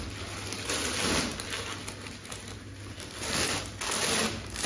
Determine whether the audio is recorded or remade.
recorded